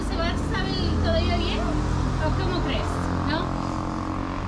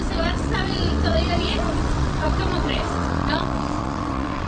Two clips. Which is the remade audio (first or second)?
second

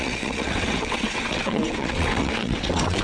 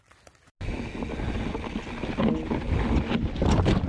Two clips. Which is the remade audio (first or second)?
first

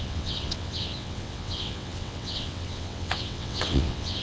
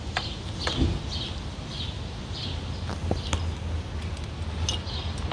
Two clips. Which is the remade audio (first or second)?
first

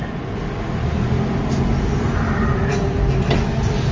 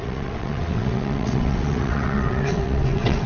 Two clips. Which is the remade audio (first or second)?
second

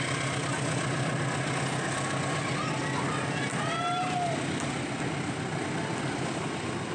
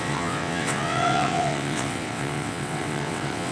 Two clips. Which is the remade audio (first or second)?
second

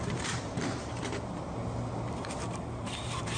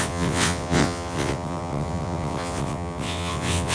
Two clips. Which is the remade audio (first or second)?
second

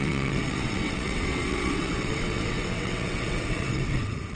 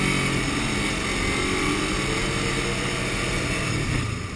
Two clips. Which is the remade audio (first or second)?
first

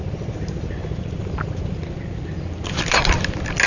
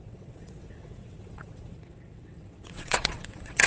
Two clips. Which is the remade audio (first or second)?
second